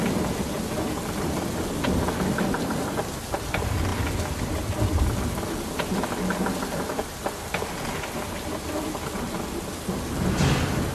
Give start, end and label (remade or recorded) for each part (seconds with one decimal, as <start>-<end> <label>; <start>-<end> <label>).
0.0-10.9 recorded